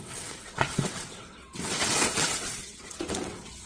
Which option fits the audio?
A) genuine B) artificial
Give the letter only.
B